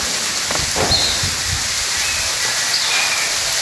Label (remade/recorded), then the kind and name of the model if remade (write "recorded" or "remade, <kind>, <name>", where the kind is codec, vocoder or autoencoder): recorded